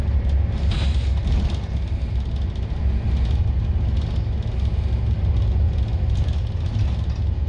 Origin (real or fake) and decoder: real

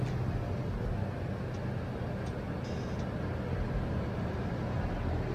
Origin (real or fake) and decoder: real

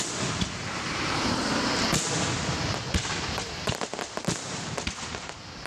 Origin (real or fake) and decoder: fake, vocoder, BigVGAN v2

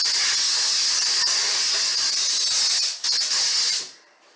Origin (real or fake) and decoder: real